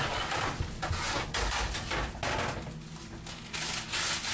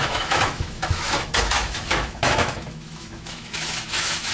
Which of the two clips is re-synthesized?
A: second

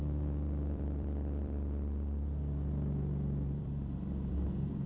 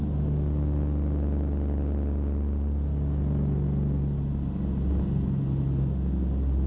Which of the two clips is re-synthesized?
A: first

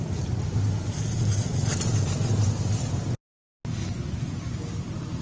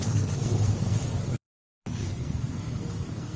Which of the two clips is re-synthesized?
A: second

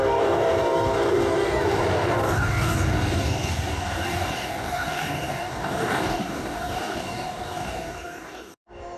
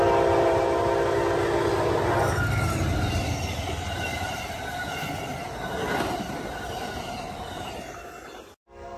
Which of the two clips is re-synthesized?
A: first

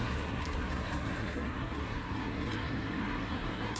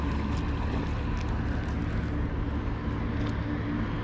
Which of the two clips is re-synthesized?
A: first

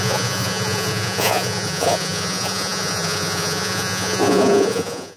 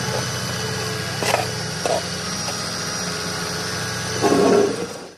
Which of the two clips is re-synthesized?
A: first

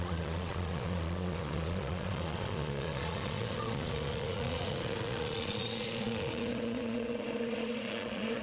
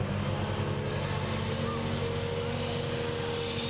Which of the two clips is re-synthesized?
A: first